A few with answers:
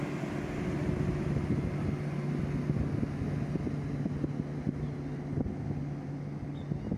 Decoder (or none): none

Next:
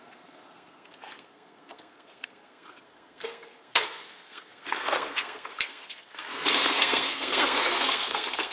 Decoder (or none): codec, SNAC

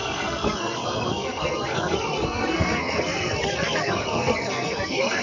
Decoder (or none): codec, SNAC